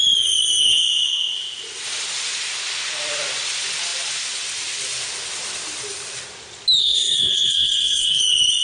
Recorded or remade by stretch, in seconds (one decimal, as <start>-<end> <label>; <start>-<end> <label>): 0.0-6.8 recorded; 6.8-8.2 remade; 8.2-8.6 recorded